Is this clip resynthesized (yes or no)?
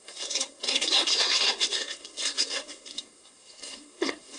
yes